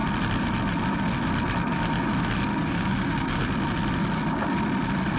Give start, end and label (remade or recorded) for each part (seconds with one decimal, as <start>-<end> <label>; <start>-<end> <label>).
0.0-2.5 recorded; 2.5-3.4 remade; 3.4-5.2 recorded